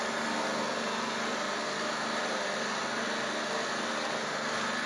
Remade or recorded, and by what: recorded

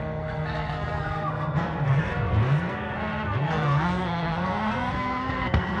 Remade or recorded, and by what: remade, codec, SNAC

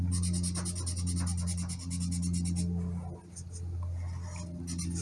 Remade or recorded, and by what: recorded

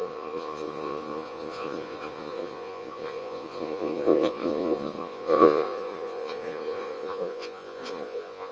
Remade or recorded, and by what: remade, vocoder, Vocos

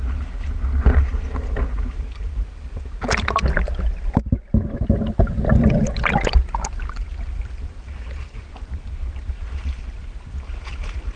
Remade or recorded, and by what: recorded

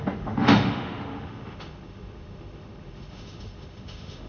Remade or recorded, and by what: remade, autoencoder, DAC-VAE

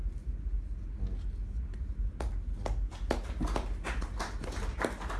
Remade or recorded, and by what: recorded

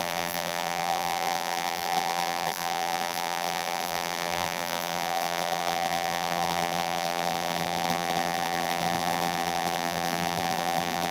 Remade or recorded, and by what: remade, vocoder, BigVGAN v2